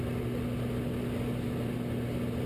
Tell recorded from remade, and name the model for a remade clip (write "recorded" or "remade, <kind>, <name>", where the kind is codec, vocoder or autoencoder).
recorded